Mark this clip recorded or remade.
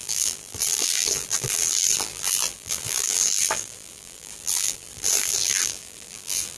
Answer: remade